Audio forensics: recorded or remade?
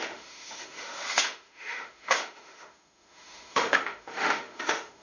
remade